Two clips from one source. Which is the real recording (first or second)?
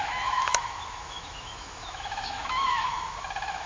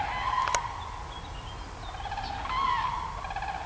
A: second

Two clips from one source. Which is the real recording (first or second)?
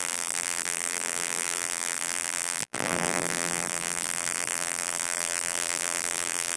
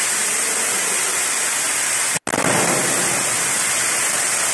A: second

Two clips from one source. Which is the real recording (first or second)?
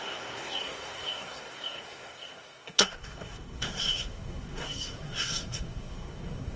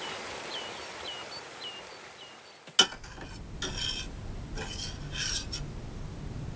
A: second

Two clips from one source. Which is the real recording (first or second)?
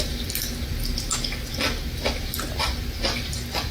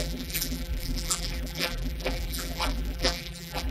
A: first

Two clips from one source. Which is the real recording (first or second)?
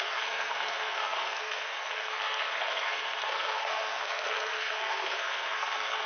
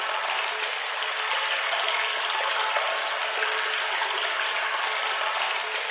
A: second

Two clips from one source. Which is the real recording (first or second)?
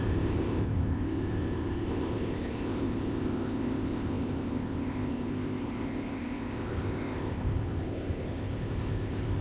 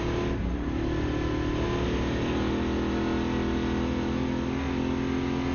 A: second